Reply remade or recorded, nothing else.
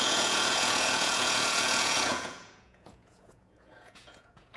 remade